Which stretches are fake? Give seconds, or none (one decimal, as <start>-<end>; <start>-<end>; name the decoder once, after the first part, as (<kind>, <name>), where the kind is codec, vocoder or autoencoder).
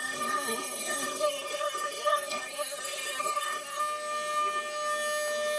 0.0-3.8 (codec, SNAC)